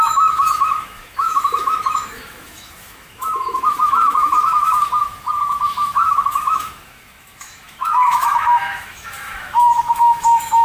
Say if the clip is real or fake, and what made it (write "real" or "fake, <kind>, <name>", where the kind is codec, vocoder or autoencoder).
fake, autoencoder, DAC-VAE